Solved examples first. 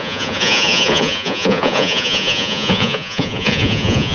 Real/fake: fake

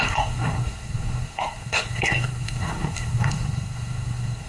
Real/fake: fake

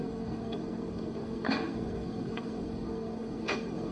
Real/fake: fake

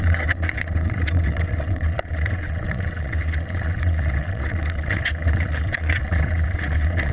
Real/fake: fake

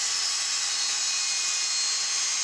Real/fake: real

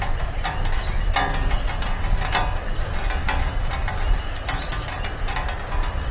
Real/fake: real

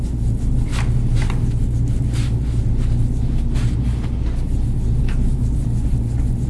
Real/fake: real